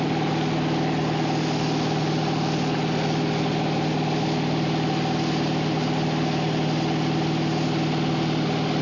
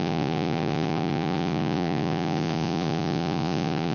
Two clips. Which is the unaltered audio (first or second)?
first